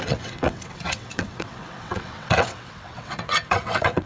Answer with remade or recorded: remade